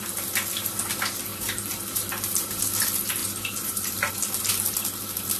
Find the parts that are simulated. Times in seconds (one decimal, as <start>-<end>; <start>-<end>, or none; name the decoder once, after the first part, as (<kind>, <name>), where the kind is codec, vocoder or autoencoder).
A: 1.3-2.6 (vocoder, BigVGAN v2); 3.2-4.1